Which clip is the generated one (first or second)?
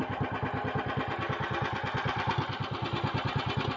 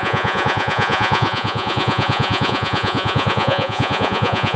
second